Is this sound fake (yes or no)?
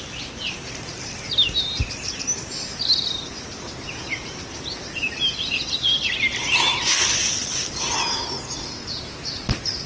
no